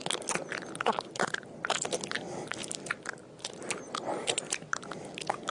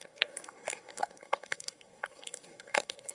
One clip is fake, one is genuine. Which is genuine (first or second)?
first